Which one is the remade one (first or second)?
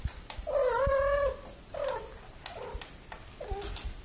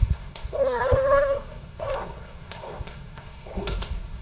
second